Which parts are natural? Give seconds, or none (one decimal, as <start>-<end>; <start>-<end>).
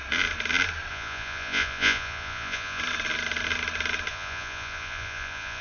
0.0-0.9; 2.8-4.1